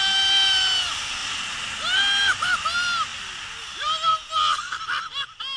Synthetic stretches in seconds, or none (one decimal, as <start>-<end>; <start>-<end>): none